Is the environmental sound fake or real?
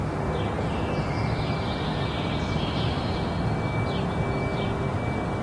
real